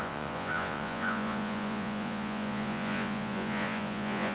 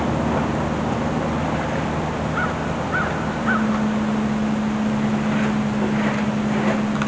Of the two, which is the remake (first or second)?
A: first